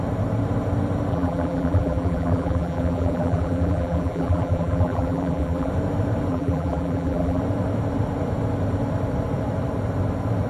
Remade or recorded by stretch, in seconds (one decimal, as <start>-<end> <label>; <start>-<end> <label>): 0.0-1.1 recorded; 1.1-5.7 remade; 5.7-6.3 recorded; 6.3-7.4 remade; 7.4-10.5 recorded